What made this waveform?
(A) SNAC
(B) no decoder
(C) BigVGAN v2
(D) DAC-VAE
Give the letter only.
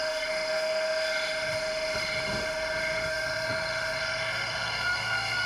D